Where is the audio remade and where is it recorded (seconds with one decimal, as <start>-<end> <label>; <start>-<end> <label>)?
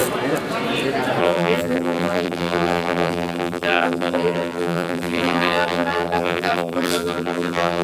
0.0-1.2 recorded; 1.2-7.8 remade